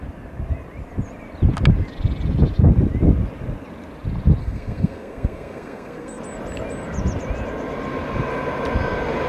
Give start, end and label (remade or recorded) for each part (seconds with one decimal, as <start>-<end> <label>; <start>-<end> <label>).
0.0-4.4 recorded; 4.4-6.2 remade; 6.2-9.3 recorded